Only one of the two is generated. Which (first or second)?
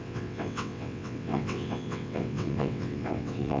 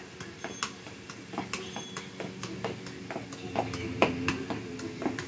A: first